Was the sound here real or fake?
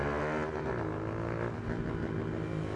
real